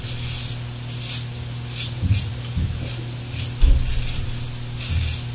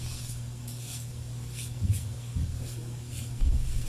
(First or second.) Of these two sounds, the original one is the first